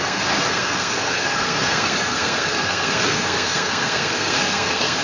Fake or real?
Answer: fake